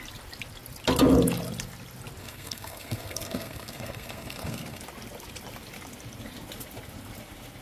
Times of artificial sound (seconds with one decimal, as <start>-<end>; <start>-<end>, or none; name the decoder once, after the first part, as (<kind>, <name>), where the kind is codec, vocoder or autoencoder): 2.2-4.8 (codec, SNAC)